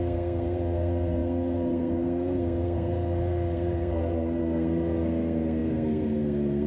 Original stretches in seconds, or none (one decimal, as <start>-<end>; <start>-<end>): none